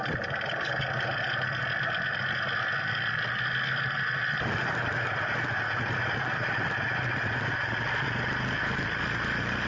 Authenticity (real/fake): real